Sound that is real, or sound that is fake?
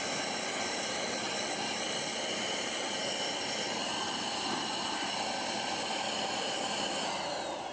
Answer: real